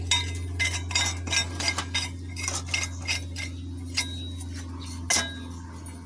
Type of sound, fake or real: real